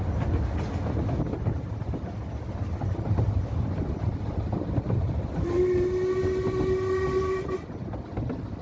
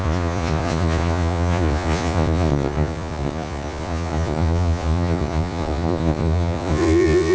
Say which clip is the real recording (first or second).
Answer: first